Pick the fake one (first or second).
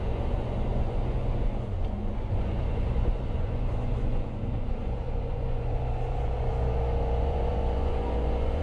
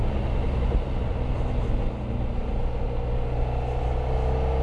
first